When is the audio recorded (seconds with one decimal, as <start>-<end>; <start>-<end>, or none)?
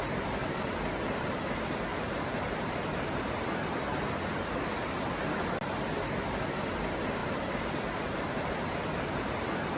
0.0-0.4; 1.4-1.9; 2.8-7.2; 8.5-9.8